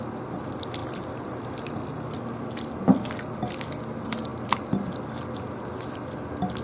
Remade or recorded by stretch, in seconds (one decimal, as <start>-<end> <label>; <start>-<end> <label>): 0.0-6.6 recorded